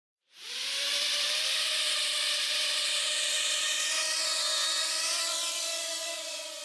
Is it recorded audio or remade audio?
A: remade